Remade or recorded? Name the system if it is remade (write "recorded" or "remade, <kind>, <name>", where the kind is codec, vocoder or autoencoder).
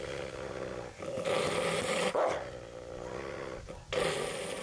recorded